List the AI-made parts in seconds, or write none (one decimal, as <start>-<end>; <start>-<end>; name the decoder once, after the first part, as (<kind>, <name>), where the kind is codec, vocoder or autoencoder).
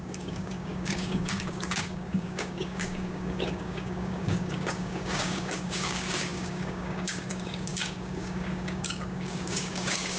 0.0-10.2 (codec, DAC)